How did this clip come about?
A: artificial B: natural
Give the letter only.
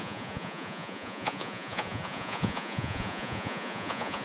A